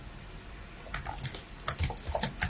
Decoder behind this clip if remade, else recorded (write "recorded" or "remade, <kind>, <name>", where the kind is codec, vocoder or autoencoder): recorded